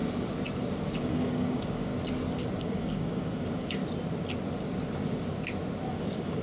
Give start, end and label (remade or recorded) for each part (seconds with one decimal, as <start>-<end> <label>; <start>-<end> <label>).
0.0-1.0 recorded; 1.0-1.9 remade; 1.9-2.6 recorded; 2.6-3.8 remade; 3.8-6.0 recorded; 6.0-6.4 remade